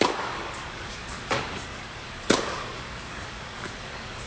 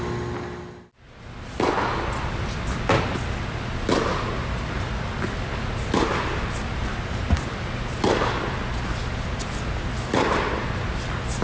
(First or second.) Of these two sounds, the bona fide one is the second